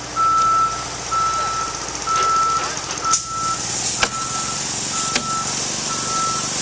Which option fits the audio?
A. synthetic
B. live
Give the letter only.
B